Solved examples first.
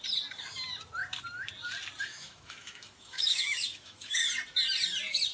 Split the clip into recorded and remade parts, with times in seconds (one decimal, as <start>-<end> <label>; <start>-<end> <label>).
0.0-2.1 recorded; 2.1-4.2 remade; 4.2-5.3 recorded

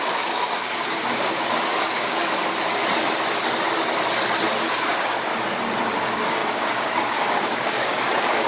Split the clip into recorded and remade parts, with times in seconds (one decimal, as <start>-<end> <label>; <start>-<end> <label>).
0.0-2.2 remade; 2.2-4.6 recorded; 4.6-5.3 remade; 5.3-6.0 recorded; 6.0-8.5 remade

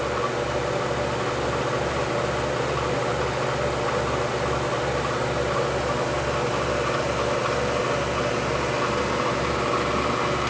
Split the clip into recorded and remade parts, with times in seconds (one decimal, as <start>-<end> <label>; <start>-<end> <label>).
0.0-10.5 recorded

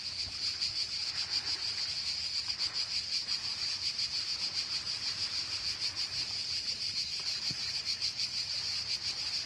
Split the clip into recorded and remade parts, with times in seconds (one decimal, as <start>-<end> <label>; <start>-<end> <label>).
0.0-9.5 recorded

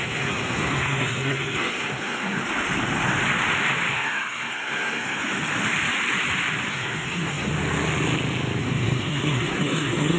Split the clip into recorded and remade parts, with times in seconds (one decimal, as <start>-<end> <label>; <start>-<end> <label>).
0.0-2.4 remade; 2.4-3.9 recorded; 3.9-5.2 remade; 5.2-6.7 recorded; 6.7-7.5 remade; 7.5-8.6 recorded; 8.6-10.2 remade

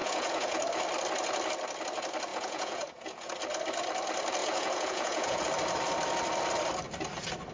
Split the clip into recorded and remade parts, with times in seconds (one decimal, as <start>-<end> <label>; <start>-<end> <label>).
0.0-0.6 remade; 0.6-2.3 recorded; 2.3-3.3 remade; 3.3-4.4 recorded; 4.4-5.4 remade; 5.4-7.5 recorded

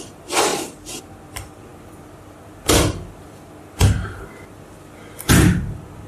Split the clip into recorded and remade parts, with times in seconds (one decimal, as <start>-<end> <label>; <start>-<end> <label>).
0.0-6.1 recorded